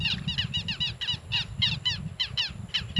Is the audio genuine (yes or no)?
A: yes